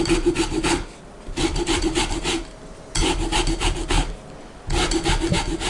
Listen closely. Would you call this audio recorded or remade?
recorded